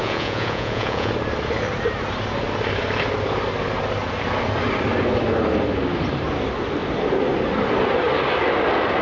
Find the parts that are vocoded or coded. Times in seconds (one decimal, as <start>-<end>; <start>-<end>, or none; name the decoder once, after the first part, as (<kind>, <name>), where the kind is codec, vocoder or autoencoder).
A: 0.0-1.1 (vocoder, Vocos)